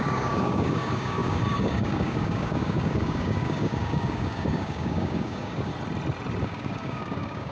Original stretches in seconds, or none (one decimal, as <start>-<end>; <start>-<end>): 5.7-6.4